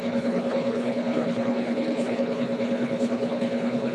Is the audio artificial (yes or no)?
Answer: yes